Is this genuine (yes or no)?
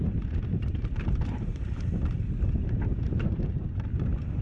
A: no